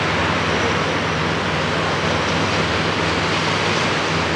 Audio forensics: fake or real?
real